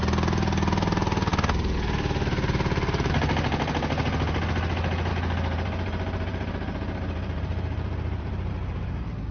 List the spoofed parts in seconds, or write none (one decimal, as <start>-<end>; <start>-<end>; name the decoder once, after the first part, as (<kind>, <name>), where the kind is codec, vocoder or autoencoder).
1.3-3.7 (vocoder, BigVGAN v2); 5.1-8.5